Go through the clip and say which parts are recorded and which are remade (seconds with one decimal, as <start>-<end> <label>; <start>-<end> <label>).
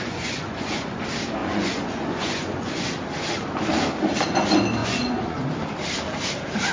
0.0-1.0 remade; 1.0-1.4 recorded; 1.4-2.9 remade; 2.9-4.8 recorded; 4.8-5.4 remade; 5.4-6.7 recorded